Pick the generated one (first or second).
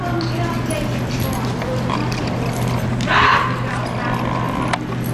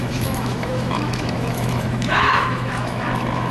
second